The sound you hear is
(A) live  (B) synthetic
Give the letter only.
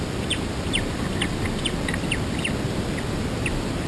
A